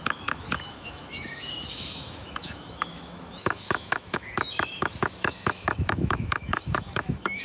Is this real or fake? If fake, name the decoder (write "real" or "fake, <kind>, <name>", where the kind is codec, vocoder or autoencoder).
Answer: fake, autoencoder, DAC-VAE